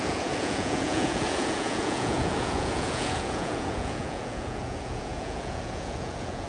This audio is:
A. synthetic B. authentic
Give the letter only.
A